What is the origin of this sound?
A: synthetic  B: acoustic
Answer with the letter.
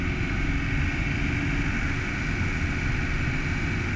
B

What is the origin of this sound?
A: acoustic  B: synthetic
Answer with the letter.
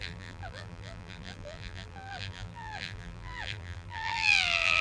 B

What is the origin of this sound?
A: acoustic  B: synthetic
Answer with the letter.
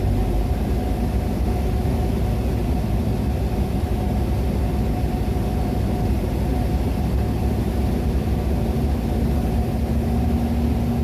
A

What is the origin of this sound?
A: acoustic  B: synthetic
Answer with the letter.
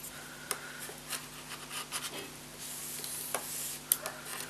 A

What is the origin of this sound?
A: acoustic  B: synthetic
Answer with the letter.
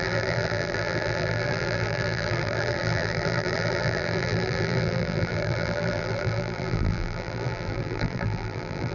B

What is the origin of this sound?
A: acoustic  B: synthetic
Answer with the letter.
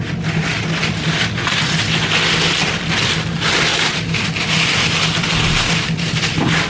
A